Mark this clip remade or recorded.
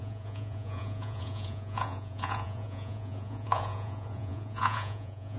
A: remade